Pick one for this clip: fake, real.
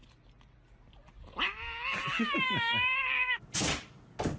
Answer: real